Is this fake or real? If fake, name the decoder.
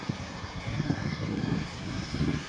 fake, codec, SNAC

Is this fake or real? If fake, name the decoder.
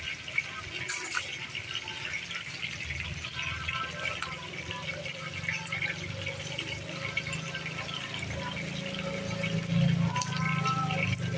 real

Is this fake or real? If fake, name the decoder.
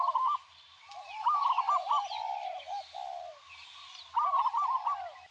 real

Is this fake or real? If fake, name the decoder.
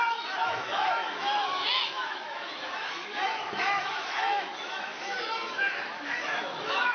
fake, autoencoder, DAC-VAE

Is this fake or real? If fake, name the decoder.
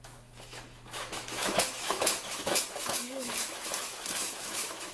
fake, autoencoder, DAC-VAE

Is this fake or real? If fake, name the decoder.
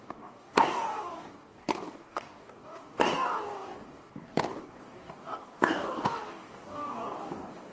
fake, codec, DAC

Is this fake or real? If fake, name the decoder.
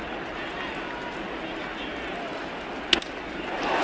real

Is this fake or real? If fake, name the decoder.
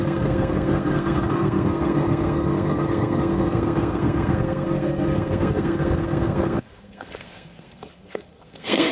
fake, codec, SNAC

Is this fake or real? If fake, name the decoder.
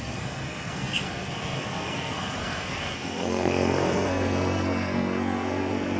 fake, codec, SNAC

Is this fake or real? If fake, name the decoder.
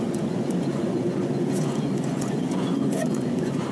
fake, vocoder, Vocos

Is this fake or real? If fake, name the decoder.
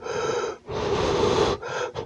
real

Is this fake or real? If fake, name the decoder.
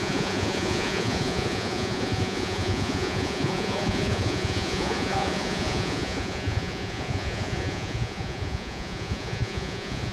fake, vocoder, Vocos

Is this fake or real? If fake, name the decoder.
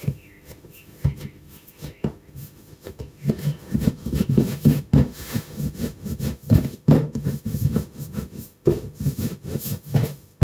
fake, autoencoder, DAC-VAE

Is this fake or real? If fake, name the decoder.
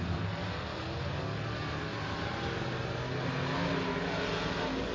real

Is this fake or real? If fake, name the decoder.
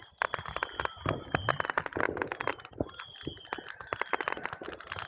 real